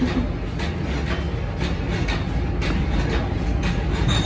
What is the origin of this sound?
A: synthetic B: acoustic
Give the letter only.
B